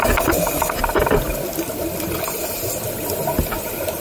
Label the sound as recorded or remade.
recorded